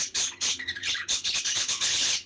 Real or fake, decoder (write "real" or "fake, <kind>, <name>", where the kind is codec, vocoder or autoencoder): fake, codec, HILCodec